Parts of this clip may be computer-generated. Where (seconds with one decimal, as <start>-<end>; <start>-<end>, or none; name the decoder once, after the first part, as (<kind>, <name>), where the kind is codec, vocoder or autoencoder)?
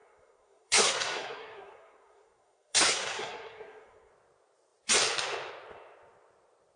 0.0-4.1 (codec, SNAC)